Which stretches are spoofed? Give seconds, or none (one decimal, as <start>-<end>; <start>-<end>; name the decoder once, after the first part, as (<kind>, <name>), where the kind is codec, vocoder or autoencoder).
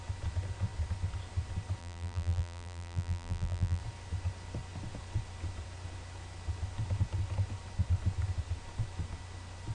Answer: 1.8-3.8 (vocoder, BigVGAN v2)